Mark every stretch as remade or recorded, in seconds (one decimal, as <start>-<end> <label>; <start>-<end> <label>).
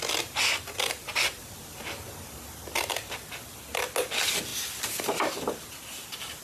0.0-6.4 recorded